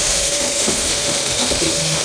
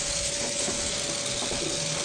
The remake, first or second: first